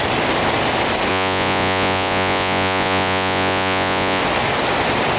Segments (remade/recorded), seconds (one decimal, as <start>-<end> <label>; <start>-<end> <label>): 0.0-1.1 recorded; 1.1-4.2 remade; 4.2-5.2 recorded